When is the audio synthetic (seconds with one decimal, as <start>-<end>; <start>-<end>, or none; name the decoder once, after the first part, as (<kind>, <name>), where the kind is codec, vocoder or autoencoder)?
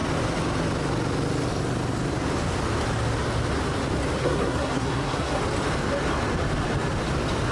4.2-5.4 (codec, SNAC)